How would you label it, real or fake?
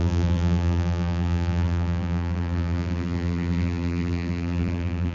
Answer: fake